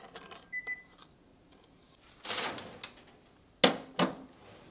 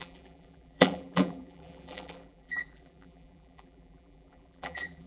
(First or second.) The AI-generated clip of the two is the second